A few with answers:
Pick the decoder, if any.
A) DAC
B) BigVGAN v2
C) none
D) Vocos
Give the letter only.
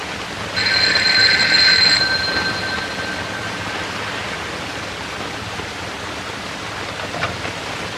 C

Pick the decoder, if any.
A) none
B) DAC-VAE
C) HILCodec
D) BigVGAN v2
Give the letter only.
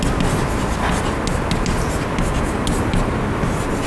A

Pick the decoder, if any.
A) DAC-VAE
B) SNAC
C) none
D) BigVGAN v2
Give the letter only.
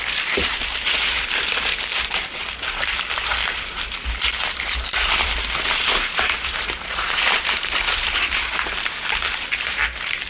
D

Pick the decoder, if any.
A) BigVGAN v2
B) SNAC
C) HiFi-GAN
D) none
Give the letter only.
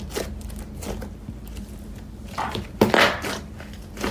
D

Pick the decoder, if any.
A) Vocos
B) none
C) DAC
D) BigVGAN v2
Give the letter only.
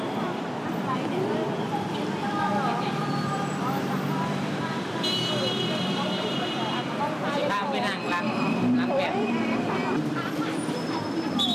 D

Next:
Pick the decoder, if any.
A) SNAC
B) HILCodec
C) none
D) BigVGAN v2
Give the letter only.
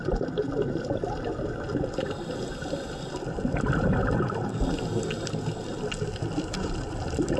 C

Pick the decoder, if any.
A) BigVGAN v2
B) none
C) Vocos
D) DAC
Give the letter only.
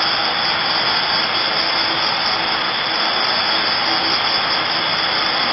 B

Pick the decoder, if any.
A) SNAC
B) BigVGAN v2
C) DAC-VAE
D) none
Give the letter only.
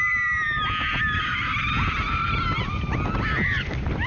D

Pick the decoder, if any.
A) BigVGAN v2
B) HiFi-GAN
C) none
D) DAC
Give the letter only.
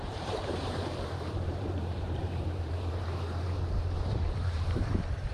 A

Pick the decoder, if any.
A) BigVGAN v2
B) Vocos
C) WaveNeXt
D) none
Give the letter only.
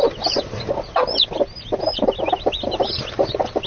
D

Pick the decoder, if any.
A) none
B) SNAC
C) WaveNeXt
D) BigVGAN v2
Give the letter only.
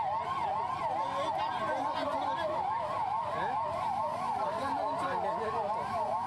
A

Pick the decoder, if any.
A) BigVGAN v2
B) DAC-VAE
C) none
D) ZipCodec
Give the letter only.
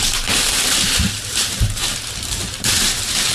A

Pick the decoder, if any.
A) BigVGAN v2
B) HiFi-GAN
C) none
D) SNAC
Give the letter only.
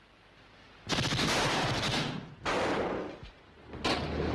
C